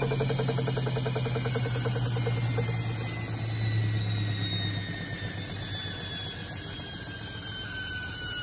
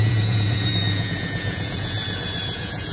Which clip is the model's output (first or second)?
second